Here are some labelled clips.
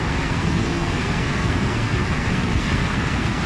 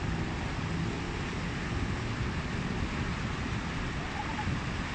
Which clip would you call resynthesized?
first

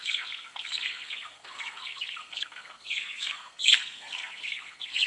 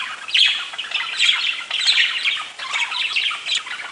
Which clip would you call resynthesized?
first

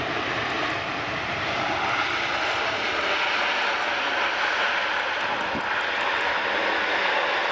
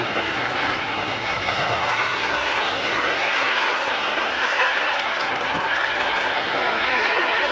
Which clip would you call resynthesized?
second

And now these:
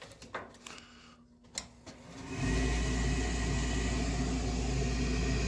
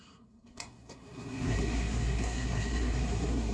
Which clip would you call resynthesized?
second